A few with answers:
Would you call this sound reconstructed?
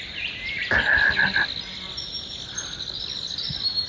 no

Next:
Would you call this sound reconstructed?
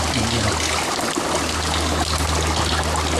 no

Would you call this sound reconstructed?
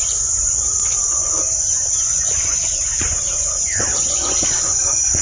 yes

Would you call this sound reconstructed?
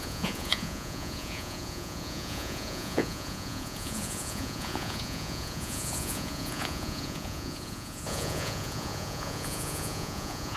yes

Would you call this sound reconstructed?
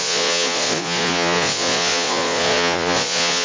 yes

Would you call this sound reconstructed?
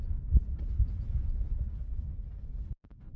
no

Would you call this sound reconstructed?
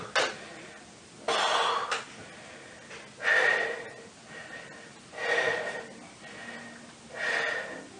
no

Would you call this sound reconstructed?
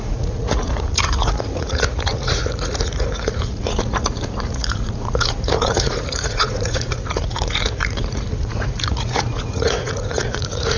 yes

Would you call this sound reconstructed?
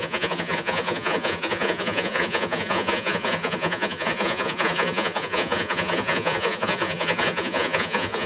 yes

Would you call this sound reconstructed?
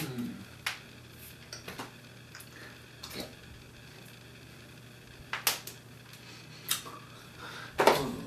no